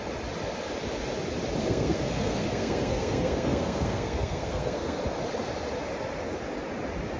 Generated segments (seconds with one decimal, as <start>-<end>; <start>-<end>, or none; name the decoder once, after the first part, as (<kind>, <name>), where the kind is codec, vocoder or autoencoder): 1.6-5.0 (codec, SNAC)

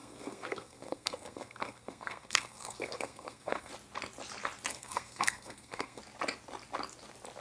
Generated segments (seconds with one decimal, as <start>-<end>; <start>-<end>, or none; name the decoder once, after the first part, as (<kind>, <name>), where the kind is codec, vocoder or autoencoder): 0.0-3.7 (codec, SNAC); 4.7-6.0